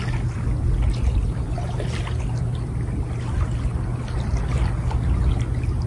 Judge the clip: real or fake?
real